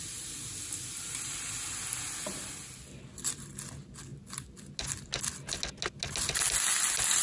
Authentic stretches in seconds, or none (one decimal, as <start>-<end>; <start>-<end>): 0.0-7.2